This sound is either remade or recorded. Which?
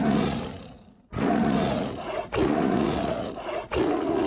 remade